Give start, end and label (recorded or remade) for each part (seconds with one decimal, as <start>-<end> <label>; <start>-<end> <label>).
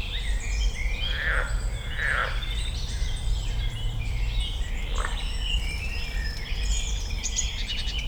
0.0-8.1 remade